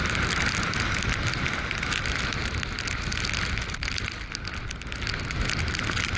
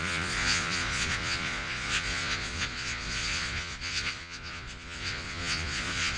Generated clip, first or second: second